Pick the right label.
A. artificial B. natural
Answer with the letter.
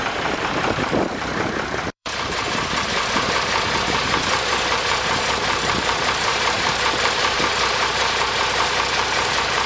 A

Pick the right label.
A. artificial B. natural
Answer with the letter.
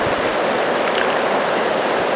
B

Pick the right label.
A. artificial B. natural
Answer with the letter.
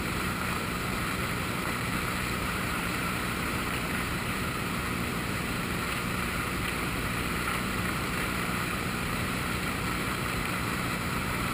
A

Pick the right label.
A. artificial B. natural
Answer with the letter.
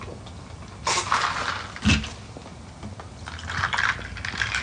B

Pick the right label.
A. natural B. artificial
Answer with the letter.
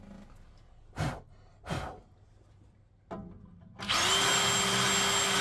A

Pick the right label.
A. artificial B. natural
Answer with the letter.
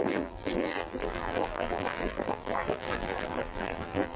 A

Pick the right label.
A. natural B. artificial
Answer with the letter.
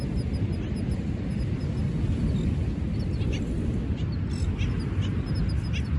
A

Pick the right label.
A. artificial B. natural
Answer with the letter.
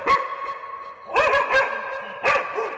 B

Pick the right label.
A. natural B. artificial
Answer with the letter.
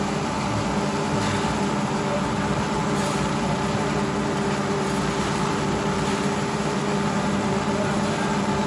B